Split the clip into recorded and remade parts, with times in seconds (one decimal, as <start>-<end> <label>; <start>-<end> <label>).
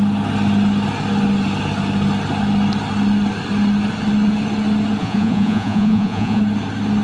0.0-5.0 recorded; 5.0-6.4 remade; 6.4-7.0 recorded